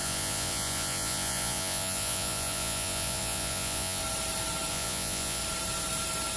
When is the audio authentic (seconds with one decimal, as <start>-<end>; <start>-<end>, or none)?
4.0-4.7; 5.4-6.4